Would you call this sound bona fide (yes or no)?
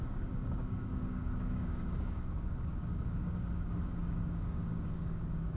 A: no